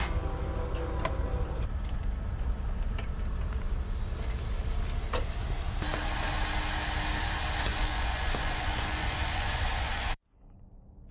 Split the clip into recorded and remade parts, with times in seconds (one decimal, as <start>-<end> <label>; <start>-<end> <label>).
0.0-7.7 recorded; 7.7-10.6 remade; 10.6-11.1 recorded